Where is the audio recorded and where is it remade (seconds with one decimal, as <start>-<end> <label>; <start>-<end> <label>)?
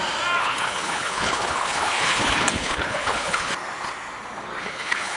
0.0-0.4 recorded; 0.4-3.5 remade; 3.5-4.6 recorded; 4.6-5.2 remade